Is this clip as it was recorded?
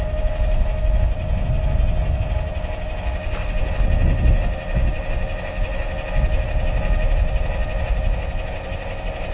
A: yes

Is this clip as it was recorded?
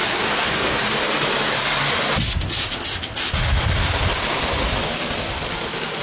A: yes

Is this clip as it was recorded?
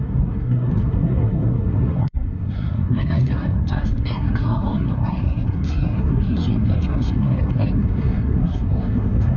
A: no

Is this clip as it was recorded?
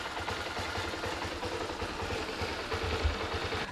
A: yes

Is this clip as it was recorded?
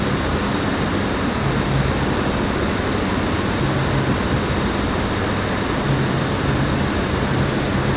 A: yes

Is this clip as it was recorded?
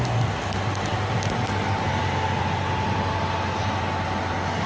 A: yes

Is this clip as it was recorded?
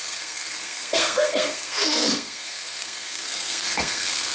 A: no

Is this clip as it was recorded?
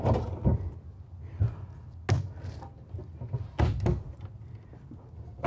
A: yes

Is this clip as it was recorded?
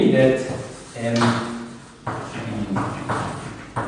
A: yes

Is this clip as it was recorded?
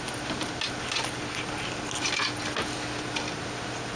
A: yes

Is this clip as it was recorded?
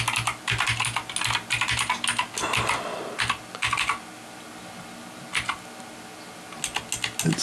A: yes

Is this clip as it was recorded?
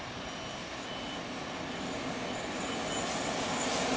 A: yes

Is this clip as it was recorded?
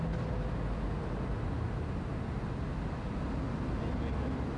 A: yes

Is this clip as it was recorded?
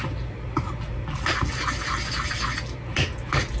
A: yes